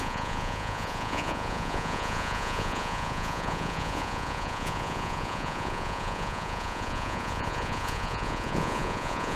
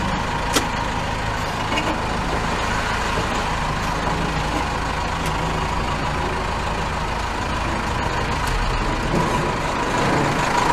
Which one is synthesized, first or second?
first